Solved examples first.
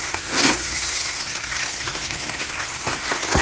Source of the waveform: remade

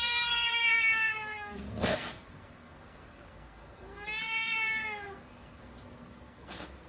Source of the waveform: remade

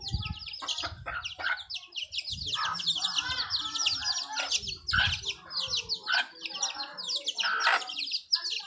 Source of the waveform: recorded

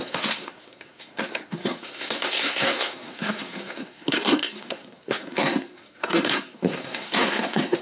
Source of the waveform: remade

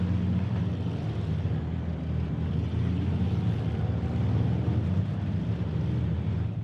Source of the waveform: recorded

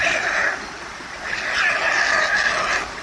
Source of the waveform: recorded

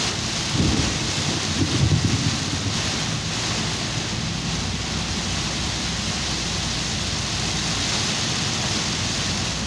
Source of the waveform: recorded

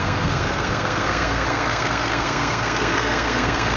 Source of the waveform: remade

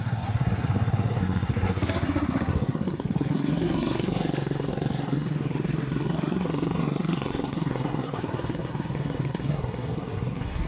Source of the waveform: remade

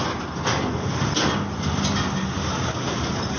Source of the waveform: recorded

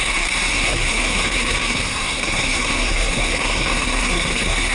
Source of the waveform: remade